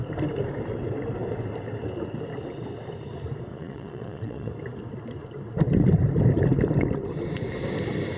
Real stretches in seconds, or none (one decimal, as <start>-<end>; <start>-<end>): 0.0-3.5; 4.5-8.2